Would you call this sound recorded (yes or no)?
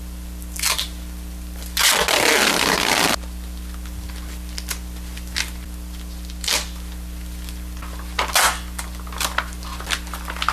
yes